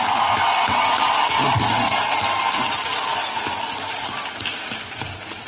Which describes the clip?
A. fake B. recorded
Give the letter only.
B